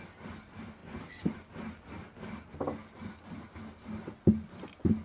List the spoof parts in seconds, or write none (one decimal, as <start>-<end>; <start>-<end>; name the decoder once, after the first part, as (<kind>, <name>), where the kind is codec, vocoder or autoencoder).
none